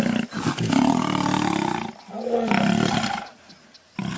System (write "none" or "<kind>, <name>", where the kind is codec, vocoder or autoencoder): none